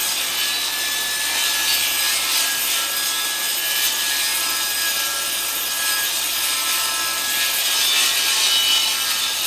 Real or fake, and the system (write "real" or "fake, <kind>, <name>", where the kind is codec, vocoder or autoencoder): real